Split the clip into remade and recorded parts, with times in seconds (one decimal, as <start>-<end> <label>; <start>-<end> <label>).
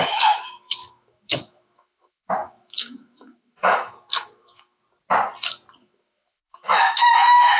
0.0-4.8 remade; 4.8-5.8 recorded; 5.8-7.6 remade